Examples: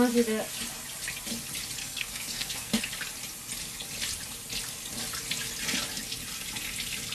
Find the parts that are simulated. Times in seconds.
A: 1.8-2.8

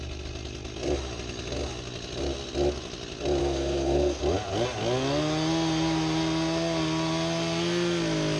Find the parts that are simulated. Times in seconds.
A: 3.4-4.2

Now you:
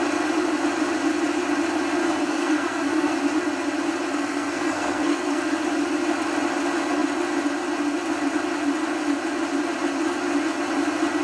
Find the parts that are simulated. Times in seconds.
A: 2.0-3.2; 4.1-5.4